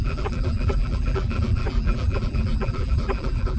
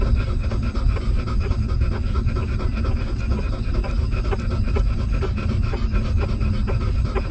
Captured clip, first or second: second